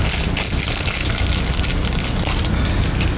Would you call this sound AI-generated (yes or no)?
no